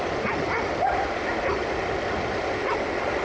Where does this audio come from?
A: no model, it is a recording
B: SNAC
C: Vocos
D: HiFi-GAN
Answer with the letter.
A